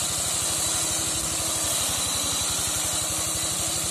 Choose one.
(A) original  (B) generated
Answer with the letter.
A